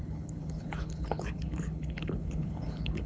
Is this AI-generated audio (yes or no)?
yes